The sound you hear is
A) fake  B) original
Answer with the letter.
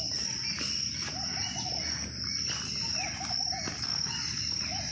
B